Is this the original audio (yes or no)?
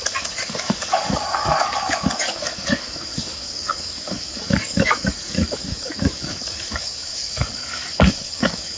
no